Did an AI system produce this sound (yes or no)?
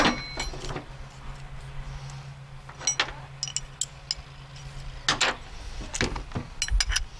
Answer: no